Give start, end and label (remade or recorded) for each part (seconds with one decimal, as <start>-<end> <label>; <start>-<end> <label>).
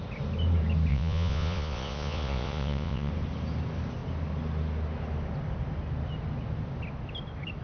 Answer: 0.0-0.9 recorded; 0.9-3.1 remade; 3.1-7.6 recorded